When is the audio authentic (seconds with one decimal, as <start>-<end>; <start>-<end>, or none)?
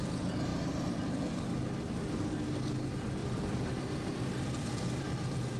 0.0-3.2